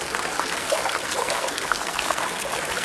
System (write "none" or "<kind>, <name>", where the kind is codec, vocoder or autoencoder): codec, SNAC